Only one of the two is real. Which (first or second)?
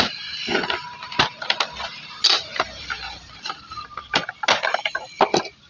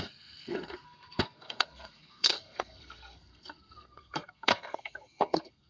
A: first